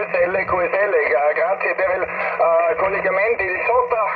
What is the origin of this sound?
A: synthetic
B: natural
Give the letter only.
A